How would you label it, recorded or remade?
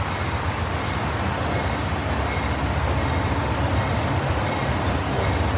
recorded